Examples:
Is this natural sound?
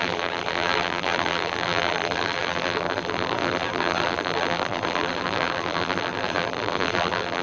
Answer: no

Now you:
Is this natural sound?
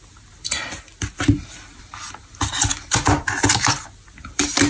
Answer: no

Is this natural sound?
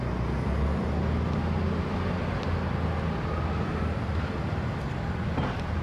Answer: yes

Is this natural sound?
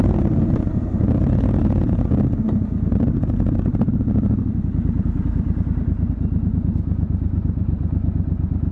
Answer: no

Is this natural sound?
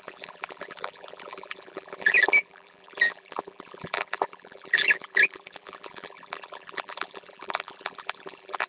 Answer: no